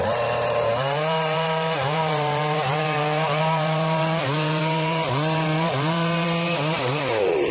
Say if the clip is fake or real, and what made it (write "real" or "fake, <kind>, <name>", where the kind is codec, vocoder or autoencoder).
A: fake, vocoder, BigVGAN v2